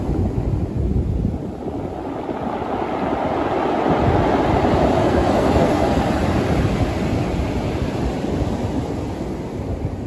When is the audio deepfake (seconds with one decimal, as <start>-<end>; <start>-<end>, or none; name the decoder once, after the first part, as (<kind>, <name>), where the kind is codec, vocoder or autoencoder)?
5.0-6.0 (codec, SNAC)